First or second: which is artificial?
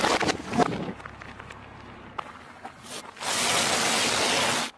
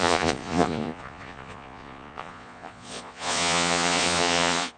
second